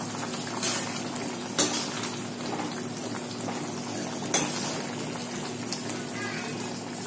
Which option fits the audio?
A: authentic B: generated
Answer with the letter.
A